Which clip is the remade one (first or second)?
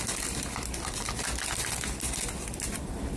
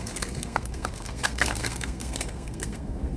second